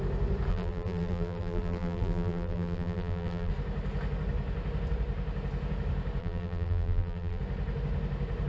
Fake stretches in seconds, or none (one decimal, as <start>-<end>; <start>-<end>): 0.5-3.5; 6.2-7.4